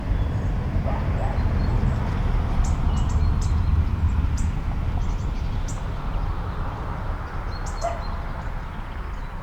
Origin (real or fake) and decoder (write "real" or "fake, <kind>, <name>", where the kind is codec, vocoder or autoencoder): real